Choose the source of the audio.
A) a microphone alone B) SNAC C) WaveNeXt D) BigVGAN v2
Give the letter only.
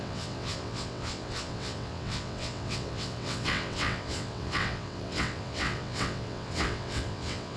C